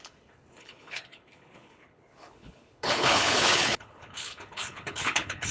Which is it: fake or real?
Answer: fake